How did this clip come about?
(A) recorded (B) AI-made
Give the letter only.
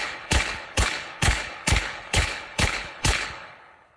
B